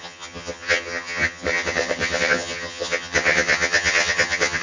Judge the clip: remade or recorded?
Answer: remade